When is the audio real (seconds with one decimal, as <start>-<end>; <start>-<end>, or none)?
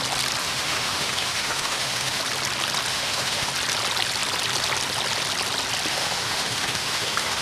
0.0-0.4; 2.2-2.9; 3.5-5.9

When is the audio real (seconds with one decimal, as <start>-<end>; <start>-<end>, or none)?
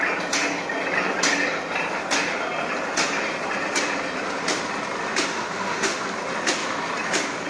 0.0-5.3; 6.0-7.5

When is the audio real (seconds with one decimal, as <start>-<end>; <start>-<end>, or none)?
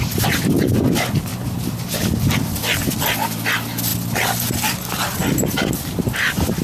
0.0-6.6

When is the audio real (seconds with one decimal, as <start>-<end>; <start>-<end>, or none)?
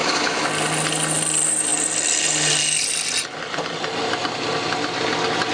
0.5-5.5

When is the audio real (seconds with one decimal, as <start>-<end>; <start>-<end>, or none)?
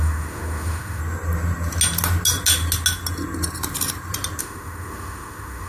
1.0-4.4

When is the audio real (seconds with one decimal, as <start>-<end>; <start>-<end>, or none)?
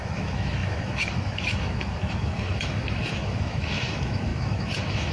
none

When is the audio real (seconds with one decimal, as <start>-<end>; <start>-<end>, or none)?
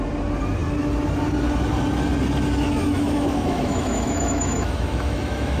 0.0-2.8